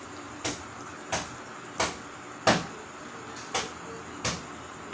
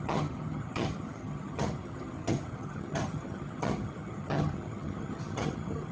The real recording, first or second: first